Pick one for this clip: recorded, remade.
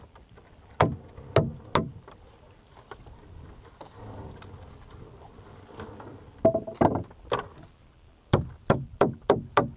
recorded